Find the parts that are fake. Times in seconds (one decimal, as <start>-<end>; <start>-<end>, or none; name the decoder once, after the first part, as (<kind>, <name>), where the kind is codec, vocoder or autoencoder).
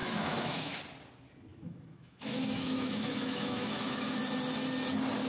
0.0-0.8 (autoencoder, DAC-VAE); 1.5-4.2